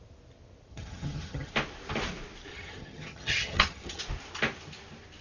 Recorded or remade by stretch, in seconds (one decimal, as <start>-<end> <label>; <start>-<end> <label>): 0.0-0.7 recorded; 0.7-1.5 remade; 1.5-2.5 recorded; 2.5-4.0 remade; 4.0-5.2 recorded